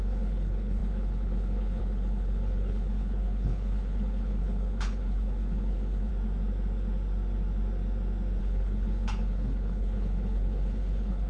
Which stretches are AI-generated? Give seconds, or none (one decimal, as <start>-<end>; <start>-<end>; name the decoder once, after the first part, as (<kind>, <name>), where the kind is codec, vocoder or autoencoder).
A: 0.0-6.1 (codec, HILCodec); 8.4-11.3

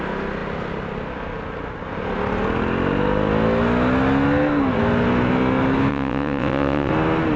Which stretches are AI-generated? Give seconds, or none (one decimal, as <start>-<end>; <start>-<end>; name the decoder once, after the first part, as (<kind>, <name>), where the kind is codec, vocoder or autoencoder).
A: 5.9-6.9 (vocoder, WaveNeXt)

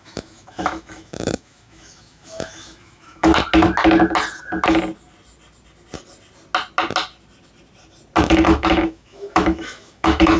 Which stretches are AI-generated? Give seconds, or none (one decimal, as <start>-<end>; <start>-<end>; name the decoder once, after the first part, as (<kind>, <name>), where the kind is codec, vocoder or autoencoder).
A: 0.0-3.3 (autoencoder, DAC-VAE); 8.2-10.4

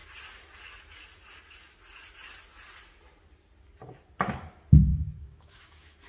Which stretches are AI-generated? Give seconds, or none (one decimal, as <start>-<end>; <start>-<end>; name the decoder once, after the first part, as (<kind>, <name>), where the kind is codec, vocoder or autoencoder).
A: 4.9-6.1 (autoencoder, DAC-VAE)

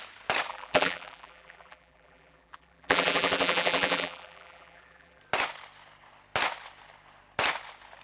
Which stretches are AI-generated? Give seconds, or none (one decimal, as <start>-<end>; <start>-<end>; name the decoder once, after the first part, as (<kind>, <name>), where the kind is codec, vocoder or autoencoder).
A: 0.5-5.2 (vocoder, BigVGAN v2)